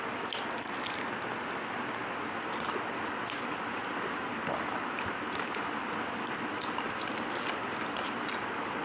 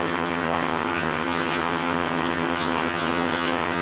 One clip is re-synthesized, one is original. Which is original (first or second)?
first